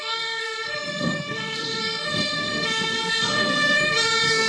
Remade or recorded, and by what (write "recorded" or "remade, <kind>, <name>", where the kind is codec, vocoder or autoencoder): remade, codec, SNAC